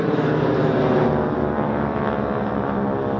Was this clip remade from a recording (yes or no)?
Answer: no